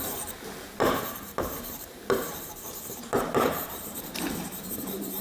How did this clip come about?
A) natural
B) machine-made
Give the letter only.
B